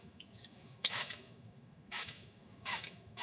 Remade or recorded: remade